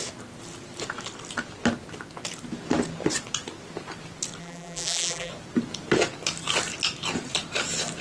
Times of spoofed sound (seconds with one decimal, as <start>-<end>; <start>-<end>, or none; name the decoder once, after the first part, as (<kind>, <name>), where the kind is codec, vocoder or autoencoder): 4.4-5.3 (vocoder, BigVGAN v2)